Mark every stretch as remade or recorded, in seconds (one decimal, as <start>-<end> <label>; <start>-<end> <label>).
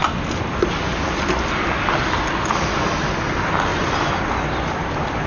0.0-5.3 recorded